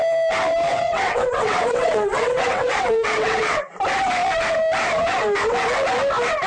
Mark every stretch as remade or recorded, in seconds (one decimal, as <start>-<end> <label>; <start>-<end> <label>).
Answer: 0.0-0.7 recorded; 0.7-3.7 remade; 3.7-6.5 recorded